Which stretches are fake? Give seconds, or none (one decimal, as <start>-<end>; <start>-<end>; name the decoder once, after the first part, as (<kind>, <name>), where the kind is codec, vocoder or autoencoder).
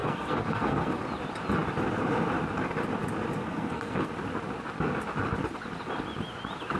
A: 0.0-1.0 (codec, SNAC); 3.4-4.1